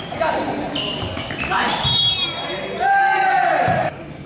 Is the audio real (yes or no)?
yes